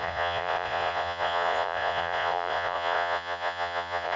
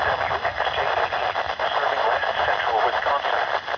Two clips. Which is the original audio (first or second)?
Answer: second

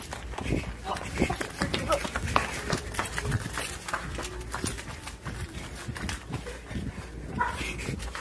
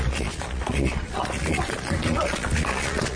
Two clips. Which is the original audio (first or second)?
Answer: first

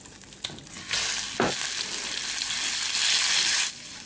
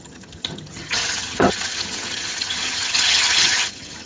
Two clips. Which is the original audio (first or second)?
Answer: first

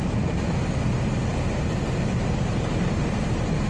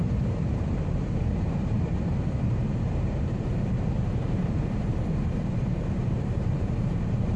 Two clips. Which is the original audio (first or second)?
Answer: first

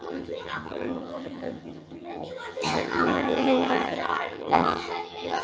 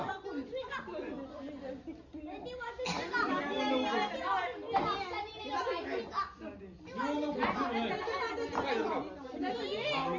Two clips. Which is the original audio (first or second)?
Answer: second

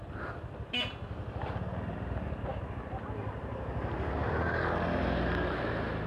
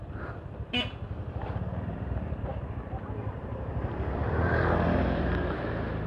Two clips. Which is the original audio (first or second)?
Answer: first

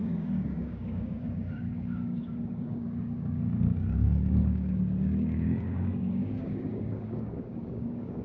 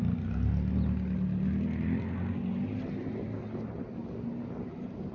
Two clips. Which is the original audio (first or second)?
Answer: second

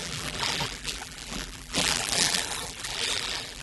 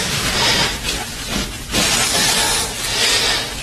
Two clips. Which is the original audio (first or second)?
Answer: second